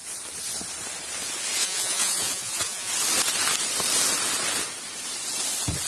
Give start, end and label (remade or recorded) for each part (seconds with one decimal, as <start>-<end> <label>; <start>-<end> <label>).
0.0-1.6 recorded; 1.6-2.9 remade; 2.9-5.9 recorded